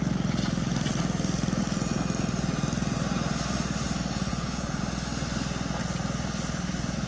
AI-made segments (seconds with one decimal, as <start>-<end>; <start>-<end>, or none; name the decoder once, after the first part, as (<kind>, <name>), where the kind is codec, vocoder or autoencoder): 4.3-4.8 (vocoder, Vocos)

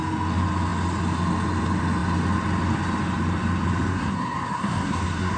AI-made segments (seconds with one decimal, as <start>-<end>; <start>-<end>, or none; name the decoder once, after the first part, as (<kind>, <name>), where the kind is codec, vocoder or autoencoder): 3.9-5.4 (codec, SNAC)